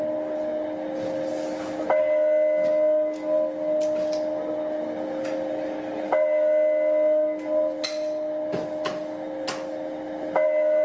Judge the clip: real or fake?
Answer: real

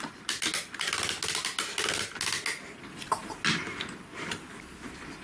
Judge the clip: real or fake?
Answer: real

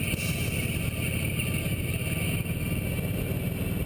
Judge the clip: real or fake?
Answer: real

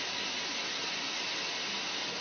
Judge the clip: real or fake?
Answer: real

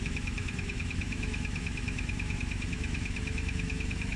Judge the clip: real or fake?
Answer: fake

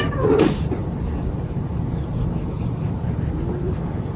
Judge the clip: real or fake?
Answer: real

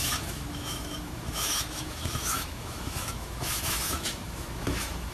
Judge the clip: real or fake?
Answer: fake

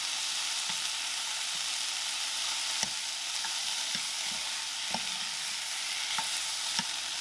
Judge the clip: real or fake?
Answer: real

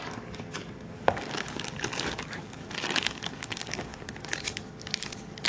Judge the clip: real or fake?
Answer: fake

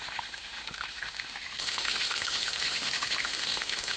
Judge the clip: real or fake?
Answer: fake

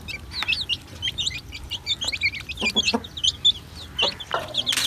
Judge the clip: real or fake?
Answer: real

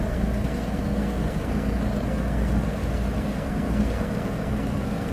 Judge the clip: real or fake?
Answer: fake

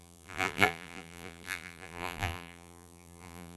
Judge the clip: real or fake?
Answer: fake